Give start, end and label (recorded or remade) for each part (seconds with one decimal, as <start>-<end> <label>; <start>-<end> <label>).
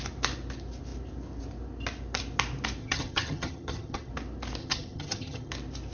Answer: 0.0-2.8 recorded; 2.8-4.1 remade; 4.1-4.6 recorded; 4.6-5.5 remade; 5.5-5.9 recorded